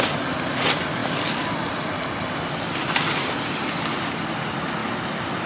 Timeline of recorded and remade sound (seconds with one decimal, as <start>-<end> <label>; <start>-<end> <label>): 0.0-1.0 recorded; 1.0-4.3 remade; 4.3-4.8 recorded; 4.8-5.5 remade